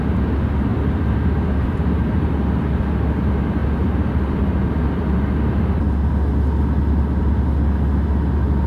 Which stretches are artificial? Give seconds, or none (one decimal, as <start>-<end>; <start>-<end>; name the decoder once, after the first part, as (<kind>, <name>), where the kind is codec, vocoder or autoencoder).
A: 0.7-2.1 (vocoder, BigVGAN v2)